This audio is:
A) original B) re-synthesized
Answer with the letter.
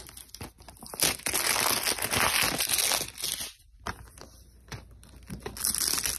A